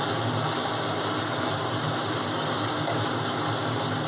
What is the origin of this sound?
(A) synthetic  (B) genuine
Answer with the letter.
B